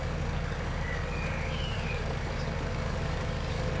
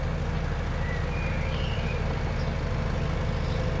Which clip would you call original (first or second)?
second